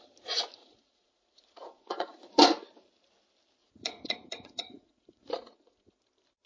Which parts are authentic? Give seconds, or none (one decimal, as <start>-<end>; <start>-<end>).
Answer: 0.0-0.6; 2.2-3.6; 6.0-6.5